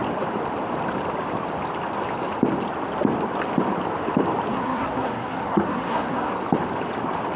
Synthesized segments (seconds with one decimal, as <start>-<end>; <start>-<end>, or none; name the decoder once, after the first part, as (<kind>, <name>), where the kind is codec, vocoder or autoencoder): 4.5-6.3 (codec, SNAC)